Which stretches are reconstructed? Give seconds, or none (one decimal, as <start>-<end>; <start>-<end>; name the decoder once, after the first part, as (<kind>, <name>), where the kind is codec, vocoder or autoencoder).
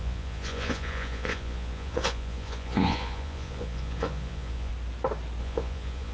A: 0.0-4.7 (vocoder, Vocos); 5.4-6.1